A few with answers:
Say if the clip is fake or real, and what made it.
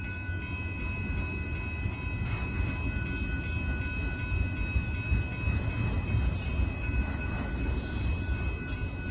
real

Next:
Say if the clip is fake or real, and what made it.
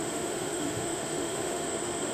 fake, autoencoder, DAC-VAE